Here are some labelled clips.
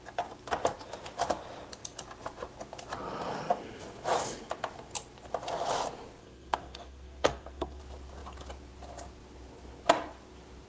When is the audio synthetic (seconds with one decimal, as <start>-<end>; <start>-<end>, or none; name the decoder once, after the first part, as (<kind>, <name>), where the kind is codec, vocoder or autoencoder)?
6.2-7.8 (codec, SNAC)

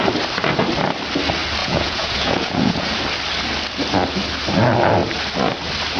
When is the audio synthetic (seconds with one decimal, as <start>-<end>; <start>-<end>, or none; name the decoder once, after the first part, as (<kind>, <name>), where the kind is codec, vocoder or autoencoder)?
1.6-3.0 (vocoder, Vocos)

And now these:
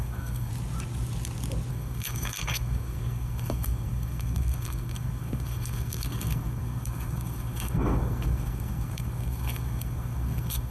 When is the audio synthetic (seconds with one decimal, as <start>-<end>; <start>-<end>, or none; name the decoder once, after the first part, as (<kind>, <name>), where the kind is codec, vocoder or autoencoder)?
0.0-0.5 (codec, SNAC); 1.7-10.7